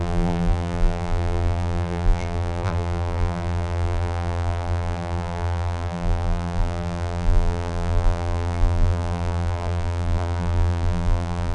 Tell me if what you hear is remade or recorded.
remade